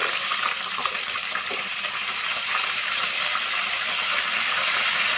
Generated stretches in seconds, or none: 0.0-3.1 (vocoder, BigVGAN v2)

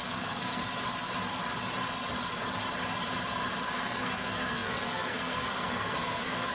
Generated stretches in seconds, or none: 0.0-0.6 (codec, SNAC); 3.6-6.5

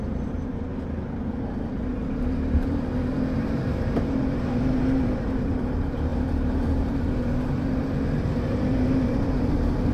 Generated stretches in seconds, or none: 0.0-0.7 (vocoder, BigVGAN v2); 1.4-9.9

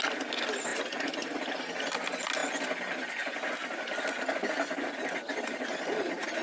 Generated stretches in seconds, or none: none

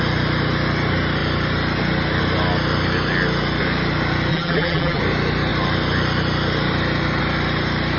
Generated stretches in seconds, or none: 4.3-5.0 (vocoder, BigVGAN v2)

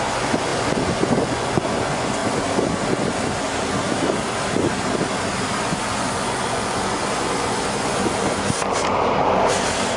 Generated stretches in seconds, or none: 0.0-2.2 (vocoder, Vocos); 5.6-8.0